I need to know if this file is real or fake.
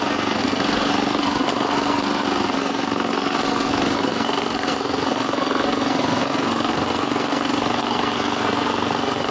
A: fake